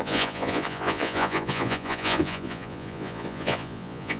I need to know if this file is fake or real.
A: fake